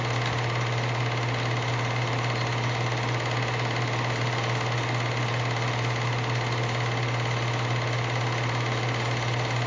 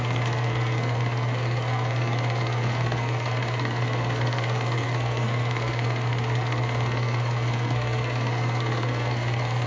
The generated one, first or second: second